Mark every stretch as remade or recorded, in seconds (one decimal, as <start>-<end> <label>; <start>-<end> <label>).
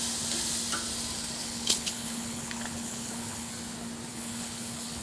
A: 0.0-1.4 recorded; 1.4-3.5 remade; 3.5-4.1 recorded; 4.1-5.0 remade